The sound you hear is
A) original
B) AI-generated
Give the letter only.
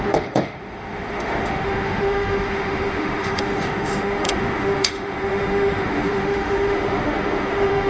B